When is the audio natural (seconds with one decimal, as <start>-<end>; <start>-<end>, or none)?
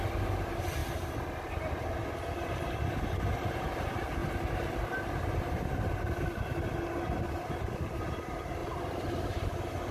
0.0-9.9